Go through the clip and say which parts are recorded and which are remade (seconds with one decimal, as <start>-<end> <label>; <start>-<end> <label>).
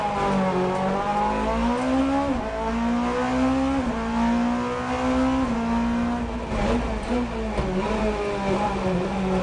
0.0-9.4 recorded